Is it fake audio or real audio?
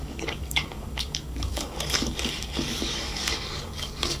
fake